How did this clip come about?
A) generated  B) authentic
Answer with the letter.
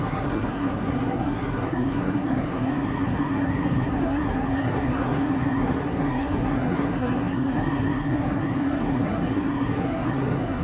A